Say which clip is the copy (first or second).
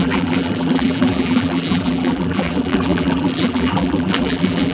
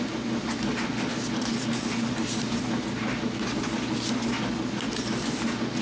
first